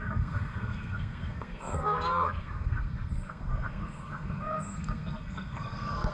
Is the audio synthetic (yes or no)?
yes